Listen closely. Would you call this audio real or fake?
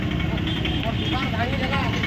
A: real